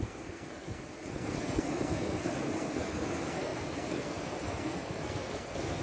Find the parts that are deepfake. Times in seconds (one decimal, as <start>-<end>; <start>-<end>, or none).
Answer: 0.0-5.8